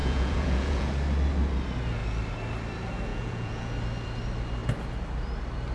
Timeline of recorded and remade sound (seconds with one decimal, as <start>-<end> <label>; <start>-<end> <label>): 0.0-0.9 remade; 0.9-3.1 recorded; 3.1-3.7 remade; 3.7-5.7 recorded